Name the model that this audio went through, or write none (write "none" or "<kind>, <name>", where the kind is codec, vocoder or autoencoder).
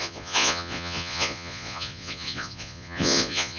vocoder, Vocos